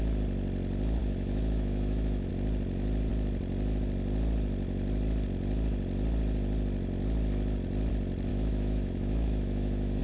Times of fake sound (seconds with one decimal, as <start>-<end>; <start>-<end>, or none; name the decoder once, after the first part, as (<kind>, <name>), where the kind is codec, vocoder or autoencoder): 1.0-2.3 (autoencoder, DAC-VAE); 8.3-10.0